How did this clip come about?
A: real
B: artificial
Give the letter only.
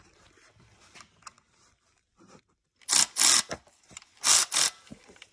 A